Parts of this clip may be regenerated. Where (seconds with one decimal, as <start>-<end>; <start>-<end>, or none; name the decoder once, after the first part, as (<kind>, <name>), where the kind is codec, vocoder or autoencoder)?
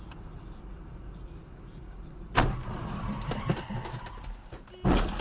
none